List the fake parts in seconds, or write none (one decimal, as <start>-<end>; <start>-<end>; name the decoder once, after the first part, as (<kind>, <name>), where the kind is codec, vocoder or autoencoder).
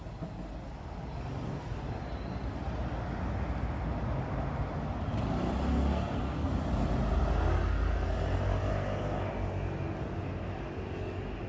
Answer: 5.7-6.5 (codec, SNAC); 8.7-9.3